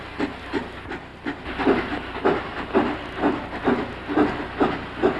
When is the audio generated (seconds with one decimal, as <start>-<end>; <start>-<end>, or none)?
none